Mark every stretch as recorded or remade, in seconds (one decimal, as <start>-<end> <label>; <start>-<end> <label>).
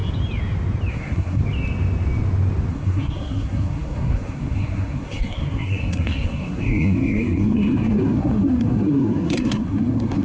0.0-0.9 recorded; 0.9-1.4 remade; 1.4-2.7 recorded; 2.7-10.2 remade